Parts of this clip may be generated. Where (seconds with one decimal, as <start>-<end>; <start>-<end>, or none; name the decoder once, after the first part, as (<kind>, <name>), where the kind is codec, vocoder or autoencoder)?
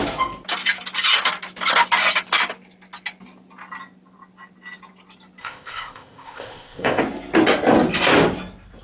5.4-7.0 (codec, ZipCodec)